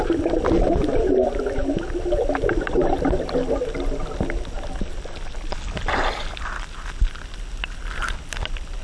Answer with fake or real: real